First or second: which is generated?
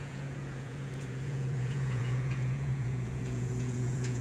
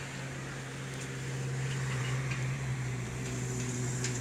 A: first